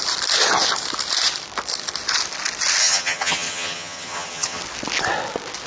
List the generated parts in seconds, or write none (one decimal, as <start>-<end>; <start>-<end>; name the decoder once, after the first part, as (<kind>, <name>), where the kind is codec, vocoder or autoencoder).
2.8-4.6 (vocoder, HiFi-GAN)